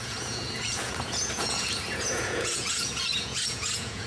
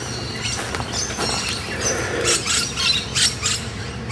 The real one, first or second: second